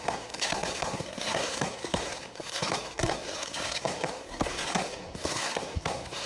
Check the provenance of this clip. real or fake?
fake